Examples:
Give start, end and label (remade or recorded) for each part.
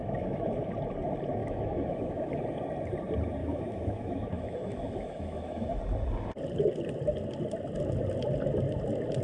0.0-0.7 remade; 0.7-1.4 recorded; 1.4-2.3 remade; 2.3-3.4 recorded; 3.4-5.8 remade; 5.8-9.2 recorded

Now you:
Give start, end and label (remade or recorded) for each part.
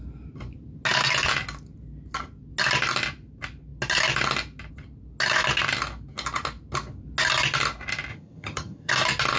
0.0-8.1 recorded; 8.1-8.9 remade; 8.9-9.4 recorded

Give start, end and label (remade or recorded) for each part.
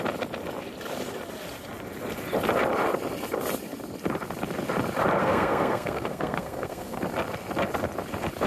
0.0-5.2 recorded; 5.2-7.0 remade; 7.0-8.5 recorded